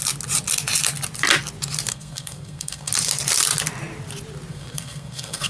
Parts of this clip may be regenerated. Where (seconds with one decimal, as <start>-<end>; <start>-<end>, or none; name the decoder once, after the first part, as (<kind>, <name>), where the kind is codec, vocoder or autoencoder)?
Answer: 1.9-2.9 (codec, SNAC); 4.5-5.5